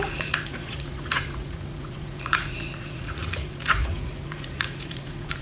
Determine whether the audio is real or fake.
fake